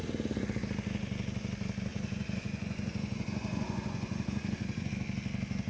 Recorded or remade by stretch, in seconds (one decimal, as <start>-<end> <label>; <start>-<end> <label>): 0.0-1.9 recorded; 1.9-4.9 remade; 4.9-5.7 recorded